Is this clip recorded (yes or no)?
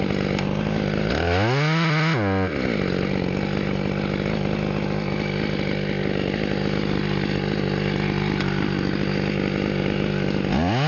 yes